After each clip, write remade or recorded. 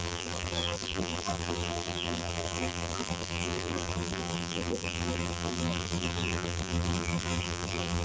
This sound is remade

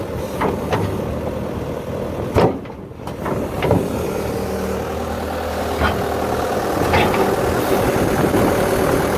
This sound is recorded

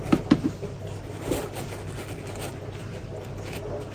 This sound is recorded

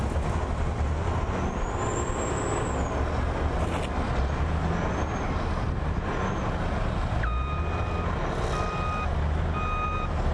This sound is recorded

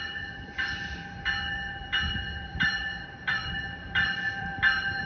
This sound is remade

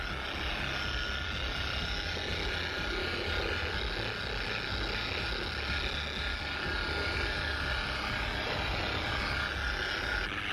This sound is recorded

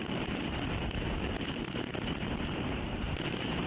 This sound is remade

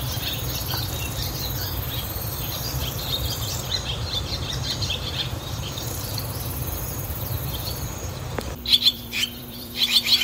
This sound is remade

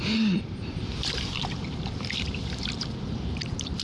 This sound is remade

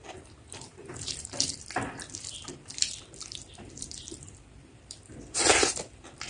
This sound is remade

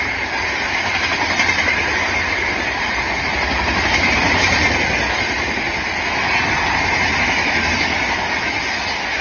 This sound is recorded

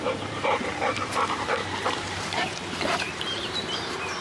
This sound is remade